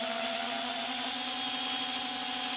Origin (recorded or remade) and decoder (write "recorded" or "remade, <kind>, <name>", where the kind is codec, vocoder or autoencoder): recorded